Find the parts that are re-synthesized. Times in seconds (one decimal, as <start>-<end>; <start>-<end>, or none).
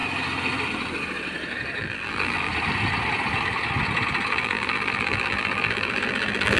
1.8-2.5; 4.3-6.6